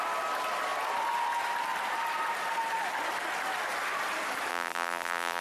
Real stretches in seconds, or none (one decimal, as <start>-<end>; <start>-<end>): 0.0-4.5